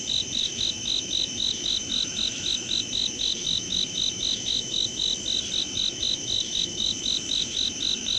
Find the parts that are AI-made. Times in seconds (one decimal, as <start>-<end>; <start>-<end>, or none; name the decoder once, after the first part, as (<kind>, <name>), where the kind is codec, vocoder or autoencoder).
0.0-5.1 (autoencoder, DAC-VAE); 5.6-8.2